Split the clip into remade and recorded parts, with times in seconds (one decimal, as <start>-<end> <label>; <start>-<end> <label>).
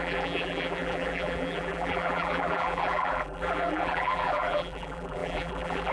0.0-5.9 remade